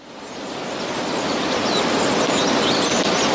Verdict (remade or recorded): recorded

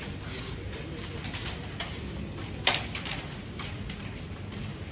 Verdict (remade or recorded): recorded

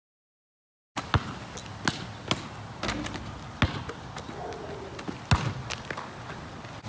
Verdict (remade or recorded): recorded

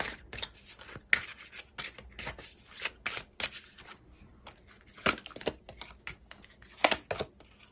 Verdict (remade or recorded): recorded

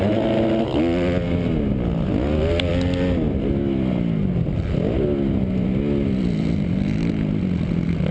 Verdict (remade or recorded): recorded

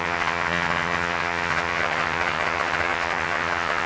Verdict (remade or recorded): remade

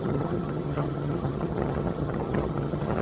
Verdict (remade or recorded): remade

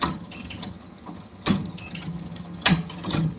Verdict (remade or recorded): remade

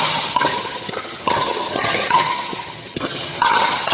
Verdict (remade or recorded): remade